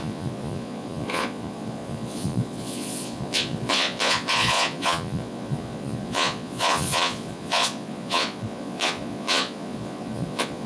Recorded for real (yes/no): no